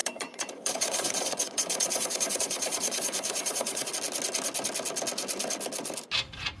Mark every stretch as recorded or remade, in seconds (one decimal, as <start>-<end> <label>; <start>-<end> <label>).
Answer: 0.0-3.9 remade; 3.9-6.6 recorded